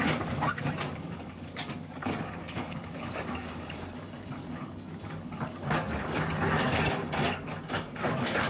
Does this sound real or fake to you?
fake